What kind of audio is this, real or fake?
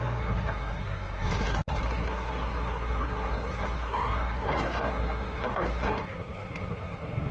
fake